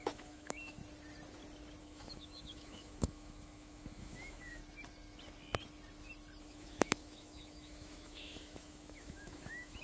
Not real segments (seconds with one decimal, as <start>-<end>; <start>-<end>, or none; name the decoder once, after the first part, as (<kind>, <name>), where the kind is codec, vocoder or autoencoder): 0.0-0.8 (autoencoder, DAC-VAE); 1.8-4.6; 6.4-9.8